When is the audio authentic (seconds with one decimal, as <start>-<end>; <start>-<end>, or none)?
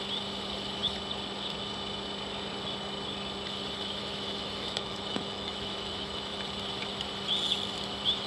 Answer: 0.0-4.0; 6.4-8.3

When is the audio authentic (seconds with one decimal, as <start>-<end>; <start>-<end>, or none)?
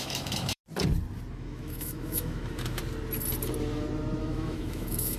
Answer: 0.6-1.3; 2.8-4.2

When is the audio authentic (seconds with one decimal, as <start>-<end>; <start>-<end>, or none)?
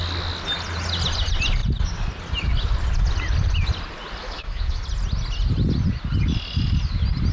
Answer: 0.0-4.2; 4.8-7.3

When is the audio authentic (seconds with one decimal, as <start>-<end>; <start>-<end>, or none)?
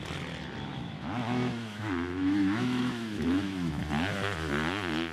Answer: 0.0-0.7; 3.8-5.1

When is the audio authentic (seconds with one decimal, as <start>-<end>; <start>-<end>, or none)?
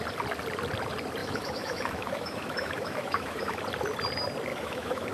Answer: 0.0-1.2; 3.6-4.5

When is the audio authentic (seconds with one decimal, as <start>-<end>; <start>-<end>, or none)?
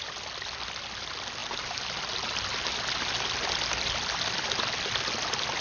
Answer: 0.0-5.6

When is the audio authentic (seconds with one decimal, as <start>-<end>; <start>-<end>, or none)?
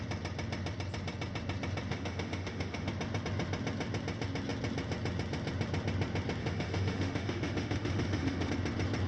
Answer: 0.0-1.9; 2.9-6.4; 8.5-9.1